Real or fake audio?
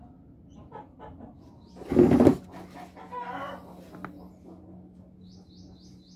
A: real